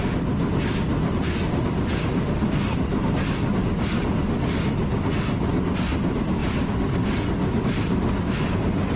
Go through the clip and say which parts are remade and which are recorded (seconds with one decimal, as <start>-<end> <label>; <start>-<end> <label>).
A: 0.0-9.0 recorded